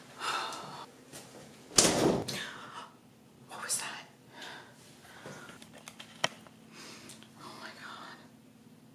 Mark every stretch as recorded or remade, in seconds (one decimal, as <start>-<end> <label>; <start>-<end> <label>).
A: 0.0-7.8 recorded; 7.8-8.3 remade; 8.3-8.9 recorded